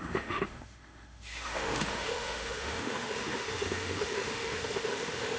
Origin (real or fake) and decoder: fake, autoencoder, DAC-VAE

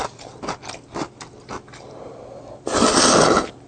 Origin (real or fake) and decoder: real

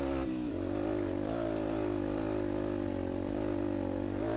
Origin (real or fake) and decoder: real